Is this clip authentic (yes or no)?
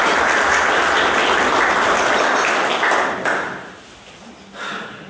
yes